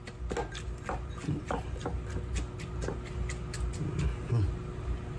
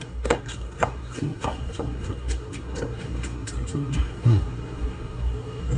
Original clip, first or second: first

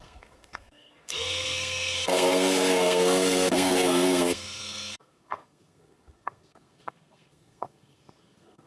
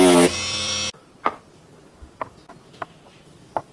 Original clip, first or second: second